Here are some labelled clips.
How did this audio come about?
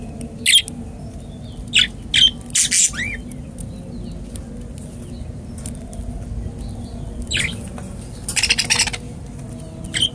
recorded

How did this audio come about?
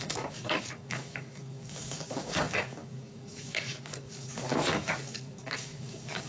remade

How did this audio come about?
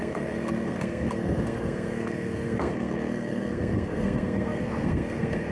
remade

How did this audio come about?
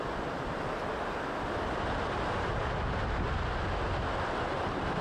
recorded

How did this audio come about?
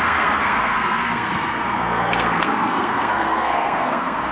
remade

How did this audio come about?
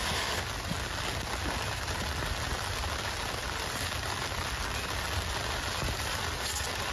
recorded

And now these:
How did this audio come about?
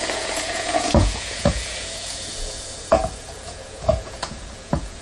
remade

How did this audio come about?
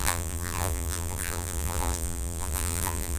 remade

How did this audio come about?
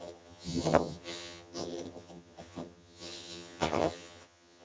remade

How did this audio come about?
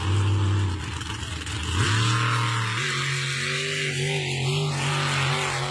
recorded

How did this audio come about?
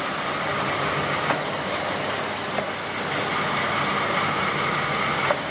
recorded